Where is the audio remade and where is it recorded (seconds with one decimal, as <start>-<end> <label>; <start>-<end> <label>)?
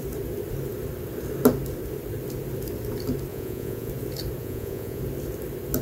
0.0-3.3 recorded; 3.3-3.9 remade; 3.9-4.4 recorded; 4.4-5.0 remade; 5.0-5.8 recorded